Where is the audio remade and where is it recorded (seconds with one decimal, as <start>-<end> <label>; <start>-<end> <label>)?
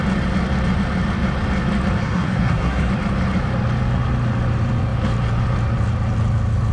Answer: 0.0-2.0 recorded; 2.0-2.9 remade; 2.9-6.7 recorded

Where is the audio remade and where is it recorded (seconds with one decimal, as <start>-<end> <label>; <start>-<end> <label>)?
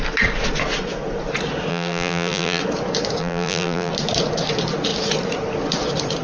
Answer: 0.0-1.7 recorded; 1.7-2.6 remade; 2.6-3.2 recorded; 3.2-3.9 remade; 3.9-6.2 recorded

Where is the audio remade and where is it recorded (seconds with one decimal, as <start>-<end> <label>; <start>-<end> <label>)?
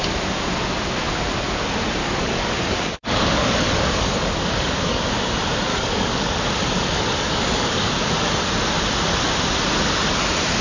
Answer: 0.0-2.0 recorded; 2.0-5.1 remade; 5.1-5.7 recorded; 5.7-7.9 remade; 7.9-10.6 recorded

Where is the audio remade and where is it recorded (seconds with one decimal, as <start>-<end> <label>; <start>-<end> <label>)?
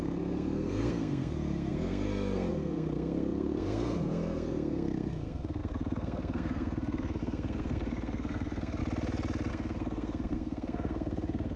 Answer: 0.0-8.8 remade; 8.8-9.5 recorded; 9.5-11.6 remade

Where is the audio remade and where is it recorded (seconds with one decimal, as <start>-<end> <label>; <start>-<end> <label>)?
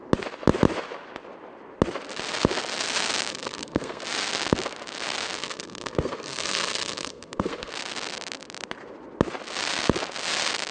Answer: 0.0-3.3 recorded; 3.3-4.0 remade; 4.0-5.4 recorded; 5.4-7.7 remade; 7.7-10.7 recorded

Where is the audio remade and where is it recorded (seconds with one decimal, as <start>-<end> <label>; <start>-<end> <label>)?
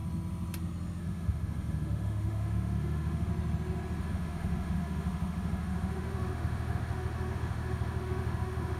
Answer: 0.0-1.0 recorded; 1.0-3.3 remade; 3.3-4.0 recorded; 4.0-8.8 remade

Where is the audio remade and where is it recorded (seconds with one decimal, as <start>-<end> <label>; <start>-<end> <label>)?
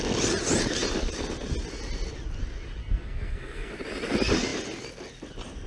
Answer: 0.0-2.8 recorded; 2.8-3.8 remade; 3.8-5.7 recorded